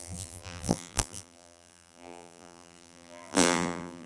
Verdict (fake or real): fake